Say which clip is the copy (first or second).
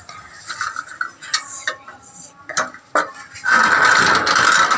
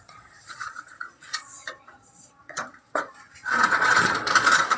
second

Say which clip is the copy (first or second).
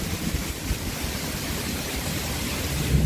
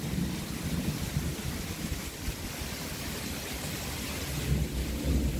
first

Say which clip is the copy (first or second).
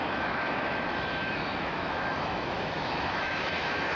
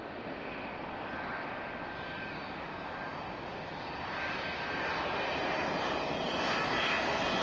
first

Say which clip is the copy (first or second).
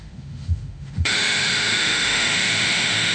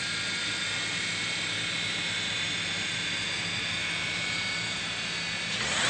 first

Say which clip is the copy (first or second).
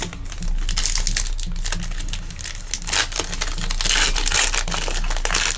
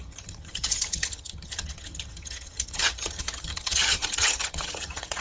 second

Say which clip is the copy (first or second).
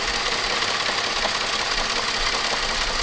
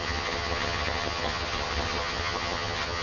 second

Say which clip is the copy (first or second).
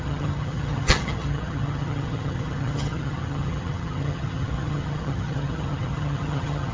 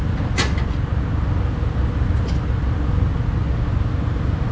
first